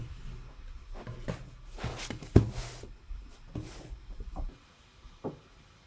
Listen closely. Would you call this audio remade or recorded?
recorded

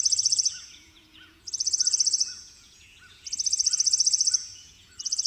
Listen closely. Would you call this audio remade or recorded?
remade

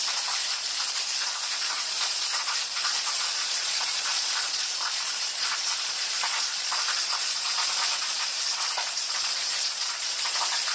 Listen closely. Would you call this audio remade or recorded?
remade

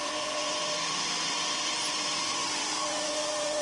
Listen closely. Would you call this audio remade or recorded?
remade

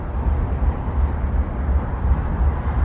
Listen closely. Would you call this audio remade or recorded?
recorded